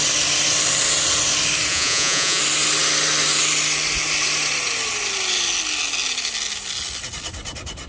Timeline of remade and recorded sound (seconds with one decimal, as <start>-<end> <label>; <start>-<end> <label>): 0.0-1.7 recorded; 1.7-2.4 remade; 2.4-7.9 recorded